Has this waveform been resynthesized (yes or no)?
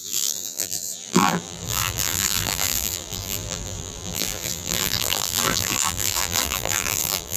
yes